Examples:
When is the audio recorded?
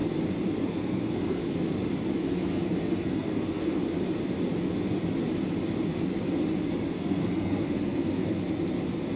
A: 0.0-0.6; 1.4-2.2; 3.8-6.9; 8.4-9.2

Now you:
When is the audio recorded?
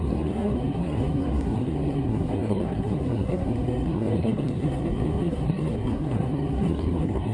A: none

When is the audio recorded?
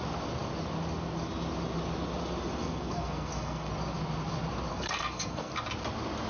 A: 0.0-2.6; 3.7-4.7; 5.5-6.3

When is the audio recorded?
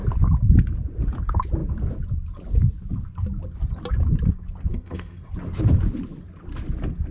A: 0.0-4.7; 5.3-7.1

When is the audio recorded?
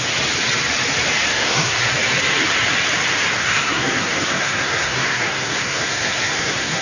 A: 0.0-1.3; 1.9-3.4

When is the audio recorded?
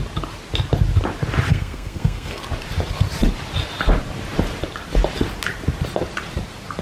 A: 0.0-1.5; 2.4-6.8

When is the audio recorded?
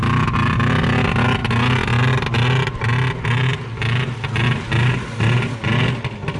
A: 0.0-6.4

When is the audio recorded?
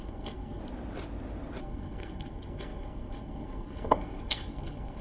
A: 0.6-1.6